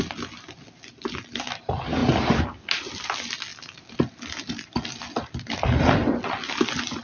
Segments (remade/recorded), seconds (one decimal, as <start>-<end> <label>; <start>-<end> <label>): 0.0-7.0 recorded